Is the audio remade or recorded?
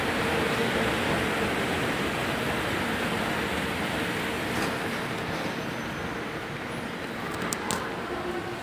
recorded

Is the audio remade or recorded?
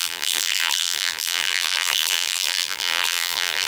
remade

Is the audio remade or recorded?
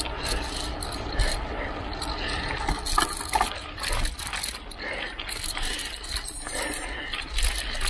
recorded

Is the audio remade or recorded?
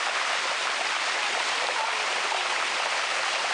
recorded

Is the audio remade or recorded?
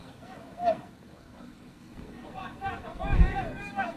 remade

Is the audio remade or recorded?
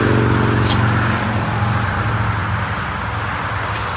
recorded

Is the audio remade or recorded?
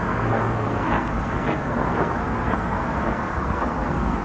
remade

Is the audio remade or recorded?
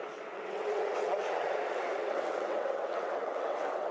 remade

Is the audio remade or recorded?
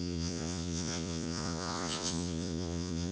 remade